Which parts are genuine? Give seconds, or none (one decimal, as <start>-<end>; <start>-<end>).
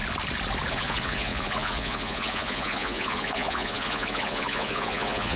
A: 0.0-0.7